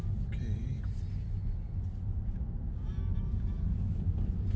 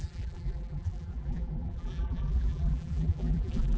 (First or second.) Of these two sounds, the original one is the first